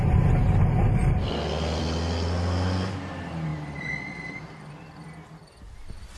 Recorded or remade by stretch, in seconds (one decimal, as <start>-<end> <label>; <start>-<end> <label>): 0.0-6.2 recorded